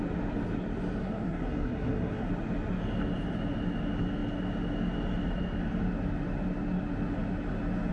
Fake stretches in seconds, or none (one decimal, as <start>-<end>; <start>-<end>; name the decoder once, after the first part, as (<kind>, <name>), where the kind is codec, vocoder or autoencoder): 1.0-2.3 (codec, SNAC)